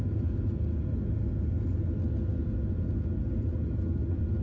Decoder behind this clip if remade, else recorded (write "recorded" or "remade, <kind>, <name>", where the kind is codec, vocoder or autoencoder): recorded